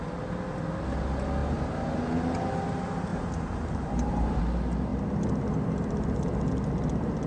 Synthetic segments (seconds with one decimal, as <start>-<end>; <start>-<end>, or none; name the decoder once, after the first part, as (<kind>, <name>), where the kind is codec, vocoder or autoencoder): 1.4-2.0 (vocoder, BigVGAN v2); 3.1-4.4